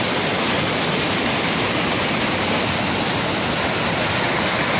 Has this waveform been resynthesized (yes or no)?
no